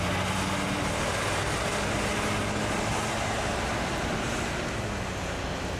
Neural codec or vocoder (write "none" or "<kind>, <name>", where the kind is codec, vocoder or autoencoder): none